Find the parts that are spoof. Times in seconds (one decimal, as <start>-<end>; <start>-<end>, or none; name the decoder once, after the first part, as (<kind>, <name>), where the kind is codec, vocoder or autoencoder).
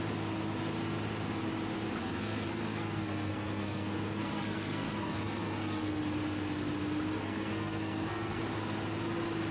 2.0-6.0 (codec, SNAC); 7.2-8.4